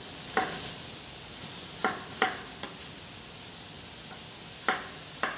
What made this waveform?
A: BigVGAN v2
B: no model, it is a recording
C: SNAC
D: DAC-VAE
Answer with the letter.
B